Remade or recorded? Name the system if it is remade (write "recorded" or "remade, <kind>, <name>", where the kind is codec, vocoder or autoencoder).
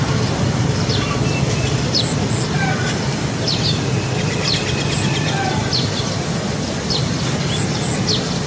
recorded